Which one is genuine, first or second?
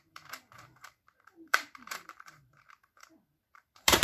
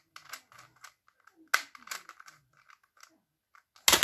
second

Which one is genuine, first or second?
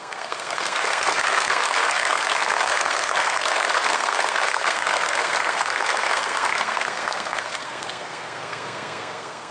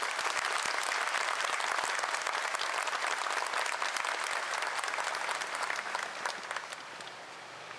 second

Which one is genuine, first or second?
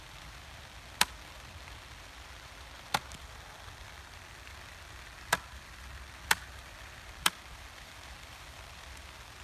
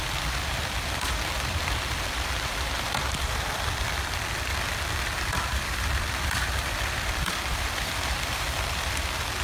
first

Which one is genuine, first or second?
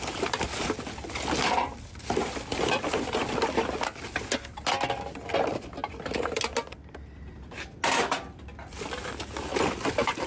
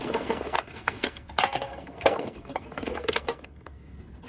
first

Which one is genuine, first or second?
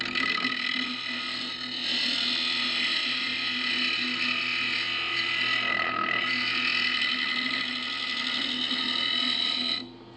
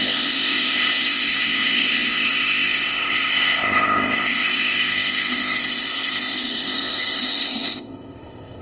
first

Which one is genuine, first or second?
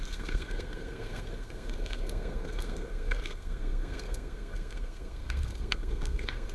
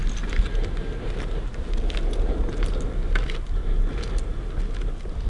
second